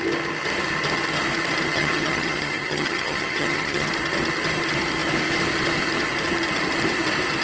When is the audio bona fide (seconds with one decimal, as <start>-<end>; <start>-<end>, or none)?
0.0-1.7; 3.9-7.4